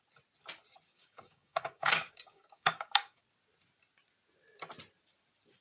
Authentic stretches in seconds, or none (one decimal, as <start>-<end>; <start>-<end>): 0.0-0.9; 3.2-5.6